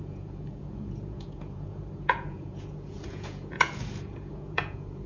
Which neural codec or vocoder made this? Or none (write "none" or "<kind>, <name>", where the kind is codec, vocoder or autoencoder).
vocoder, Vocos